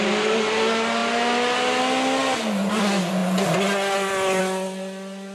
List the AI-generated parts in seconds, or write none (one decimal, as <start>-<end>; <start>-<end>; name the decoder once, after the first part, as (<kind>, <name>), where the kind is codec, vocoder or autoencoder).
none